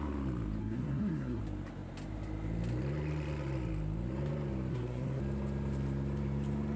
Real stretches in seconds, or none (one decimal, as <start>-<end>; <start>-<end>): 0.0-0.6; 1.4-4.7; 5.2-6.8